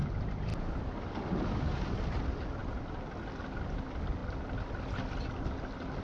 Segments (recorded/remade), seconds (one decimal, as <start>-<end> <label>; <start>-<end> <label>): 0.0-6.0 recorded